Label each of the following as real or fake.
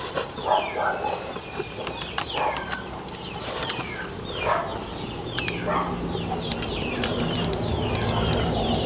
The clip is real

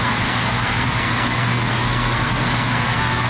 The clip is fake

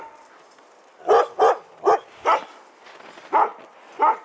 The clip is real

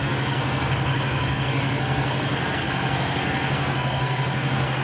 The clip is fake